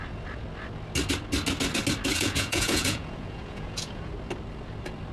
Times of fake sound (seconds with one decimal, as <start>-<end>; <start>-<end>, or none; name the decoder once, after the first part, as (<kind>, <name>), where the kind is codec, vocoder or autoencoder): 2.1-4.1 (vocoder, Vocos)